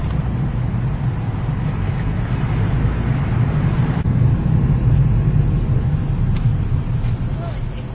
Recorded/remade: recorded